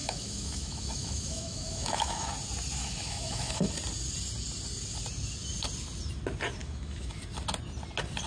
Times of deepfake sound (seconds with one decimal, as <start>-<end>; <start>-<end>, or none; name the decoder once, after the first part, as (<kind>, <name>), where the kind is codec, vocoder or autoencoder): 0.0-2.3 (autoencoder, DAC-VAE); 2.8-3.7; 6.6-7.2